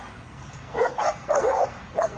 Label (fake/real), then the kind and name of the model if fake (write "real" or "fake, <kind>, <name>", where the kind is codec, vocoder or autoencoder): fake, codec, SNAC